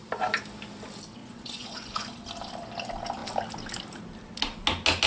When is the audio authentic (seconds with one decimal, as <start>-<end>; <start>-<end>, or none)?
0.0-1.2; 2.1-5.1